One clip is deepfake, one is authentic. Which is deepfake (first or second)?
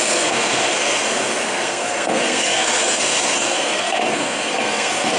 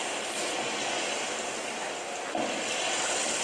first